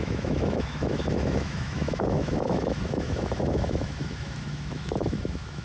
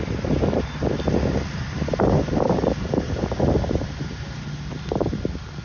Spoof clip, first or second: first